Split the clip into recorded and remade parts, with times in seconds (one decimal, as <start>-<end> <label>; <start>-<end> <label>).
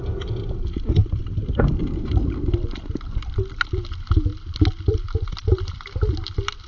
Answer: 0.0-4.3 recorded; 4.3-5.7 remade; 5.7-6.7 recorded